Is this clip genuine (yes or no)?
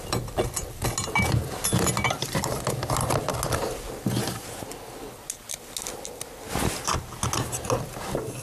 yes